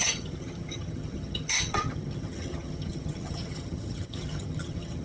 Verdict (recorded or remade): remade